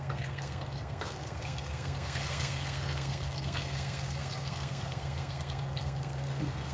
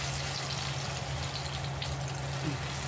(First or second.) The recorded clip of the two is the second